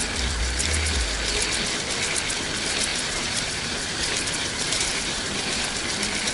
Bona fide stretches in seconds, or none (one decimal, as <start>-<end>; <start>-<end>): 0.0-2.9; 5.6-6.3